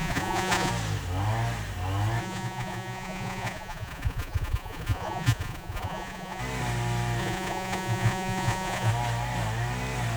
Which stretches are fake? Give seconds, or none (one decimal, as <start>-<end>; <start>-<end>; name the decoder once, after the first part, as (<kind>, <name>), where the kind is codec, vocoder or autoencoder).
0.0-0.7 (vocoder, Vocos); 2.2-6.4; 7.2-8.9